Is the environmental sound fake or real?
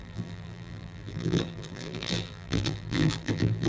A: fake